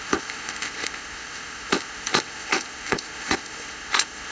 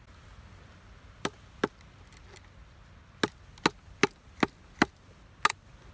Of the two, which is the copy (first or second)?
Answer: first